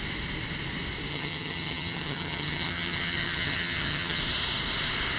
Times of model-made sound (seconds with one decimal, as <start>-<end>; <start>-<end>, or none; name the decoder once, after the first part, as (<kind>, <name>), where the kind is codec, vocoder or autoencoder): 1.1-4.2 (vocoder, HiFi-GAN)